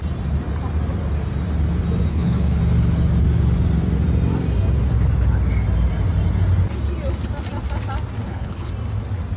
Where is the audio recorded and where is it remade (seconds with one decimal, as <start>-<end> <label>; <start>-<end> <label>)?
0.0-2.1 recorded; 2.1-2.6 remade; 2.6-8.2 recorded; 8.2-8.7 remade; 8.7-9.4 recorded